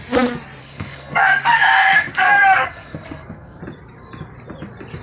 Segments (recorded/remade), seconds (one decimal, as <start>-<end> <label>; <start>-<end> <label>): 0.0-0.6 recorded; 0.6-3.6 remade; 3.6-5.0 recorded